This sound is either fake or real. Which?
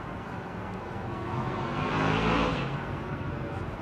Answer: fake